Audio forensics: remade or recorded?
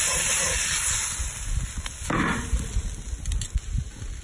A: recorded